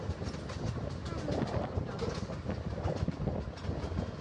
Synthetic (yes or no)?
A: no